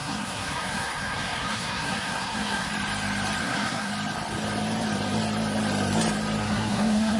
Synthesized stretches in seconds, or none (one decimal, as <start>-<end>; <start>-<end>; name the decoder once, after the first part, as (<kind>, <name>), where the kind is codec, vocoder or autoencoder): 0.0-2.7 (codec, SNAC); 3.4-3.9; 6.4-7.2